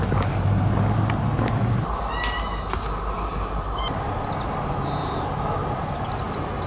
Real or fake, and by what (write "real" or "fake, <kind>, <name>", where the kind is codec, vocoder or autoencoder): real